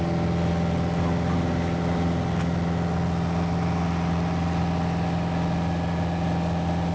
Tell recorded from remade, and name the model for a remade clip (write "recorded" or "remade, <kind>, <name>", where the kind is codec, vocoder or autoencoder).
recorded